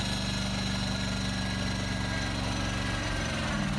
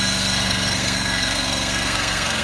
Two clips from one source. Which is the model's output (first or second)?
second